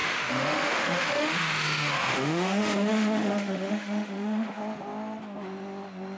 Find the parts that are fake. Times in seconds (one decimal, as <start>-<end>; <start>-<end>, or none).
0.0-4.6